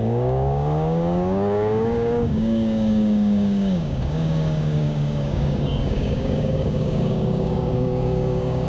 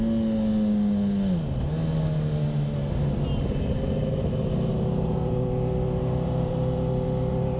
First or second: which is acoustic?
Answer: second